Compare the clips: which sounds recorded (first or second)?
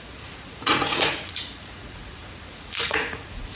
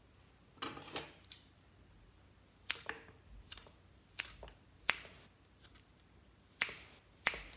second